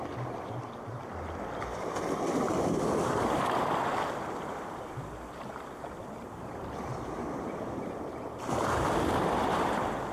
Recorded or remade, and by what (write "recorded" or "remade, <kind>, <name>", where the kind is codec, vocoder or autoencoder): recorded